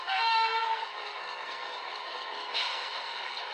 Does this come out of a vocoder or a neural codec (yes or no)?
yes